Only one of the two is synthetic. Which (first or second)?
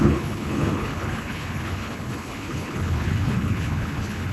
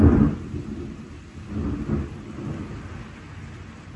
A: first